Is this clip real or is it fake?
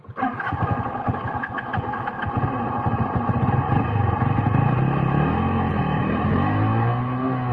real